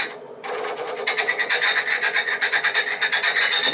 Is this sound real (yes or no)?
no